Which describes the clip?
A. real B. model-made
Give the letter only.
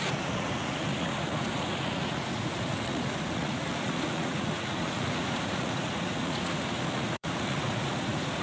B